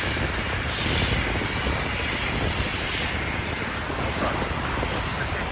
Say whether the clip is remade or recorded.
recorded